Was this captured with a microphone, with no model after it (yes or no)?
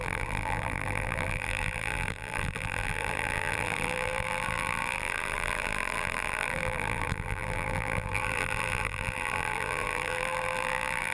no